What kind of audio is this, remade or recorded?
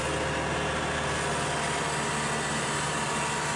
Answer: recorded